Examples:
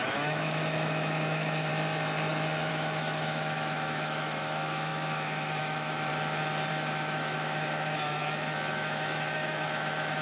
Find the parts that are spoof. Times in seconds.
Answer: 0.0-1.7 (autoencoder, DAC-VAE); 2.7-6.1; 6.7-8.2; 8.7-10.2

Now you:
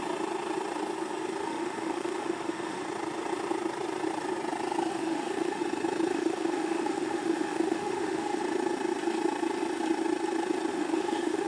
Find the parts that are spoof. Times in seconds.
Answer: 1.4-2.8 (autoencoder, DAC-VAE); 4.9-5.6; 6.1-8.4; 10.7-11.5

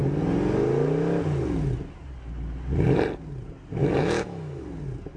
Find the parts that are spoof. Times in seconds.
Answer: 3.8-4.6 (autoencoder, DAC-VAE)